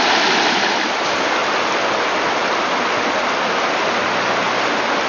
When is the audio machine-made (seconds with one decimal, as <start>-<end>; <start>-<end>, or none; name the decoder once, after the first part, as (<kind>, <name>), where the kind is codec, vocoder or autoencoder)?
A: none